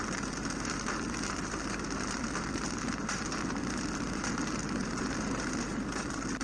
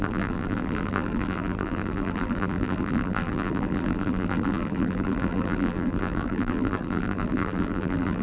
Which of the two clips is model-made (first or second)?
second